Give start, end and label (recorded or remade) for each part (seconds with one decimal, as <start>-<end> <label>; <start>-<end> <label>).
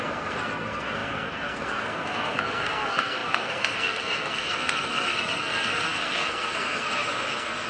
0.0-7.7 remade